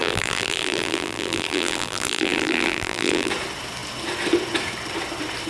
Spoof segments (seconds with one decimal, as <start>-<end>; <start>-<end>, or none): 0.0-3.3

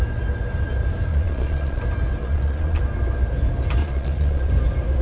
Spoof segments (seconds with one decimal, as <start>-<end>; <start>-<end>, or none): 1.1-1.8; 2.2-2.8; 3.8-4.5

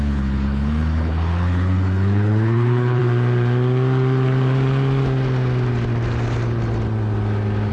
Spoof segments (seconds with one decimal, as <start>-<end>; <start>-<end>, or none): 0.0-3.0

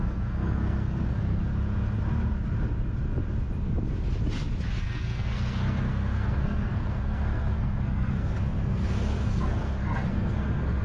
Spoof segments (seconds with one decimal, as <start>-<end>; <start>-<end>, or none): 0.0-1.4; 4.8-10.8

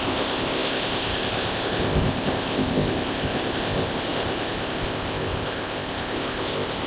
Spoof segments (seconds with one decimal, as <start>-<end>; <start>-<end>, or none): 0.0-6.9